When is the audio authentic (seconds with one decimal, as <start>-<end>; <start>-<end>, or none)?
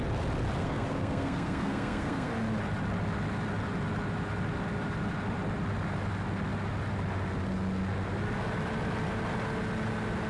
0.0-0.6; 2.3-10.3